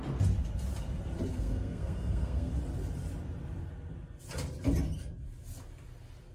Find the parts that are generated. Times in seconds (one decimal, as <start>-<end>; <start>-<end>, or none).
1.3-2.5